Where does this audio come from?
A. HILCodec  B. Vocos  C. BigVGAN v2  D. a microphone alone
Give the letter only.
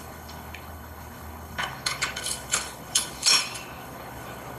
A